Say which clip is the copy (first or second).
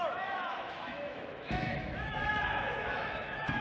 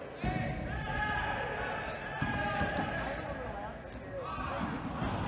first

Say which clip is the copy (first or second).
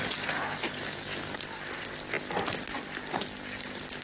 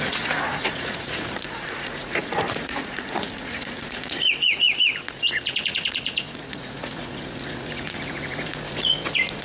second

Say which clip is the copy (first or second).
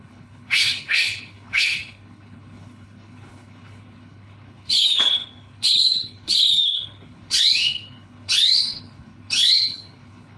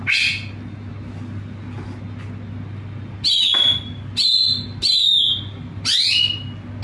first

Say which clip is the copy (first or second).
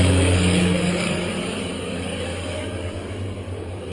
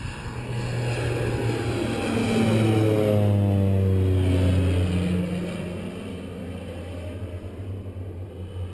first